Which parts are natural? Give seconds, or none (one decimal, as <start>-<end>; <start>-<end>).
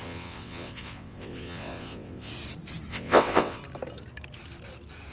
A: 2.3-2.9; 3.6-5.1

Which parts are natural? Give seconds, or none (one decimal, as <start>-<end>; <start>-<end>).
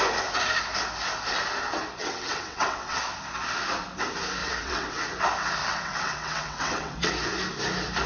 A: 0.0-2.0; 3.0-4.4; 5.0-5.6; 7.1-8.1